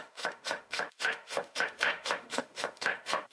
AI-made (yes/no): yes